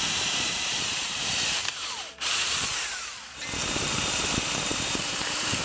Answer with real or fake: fake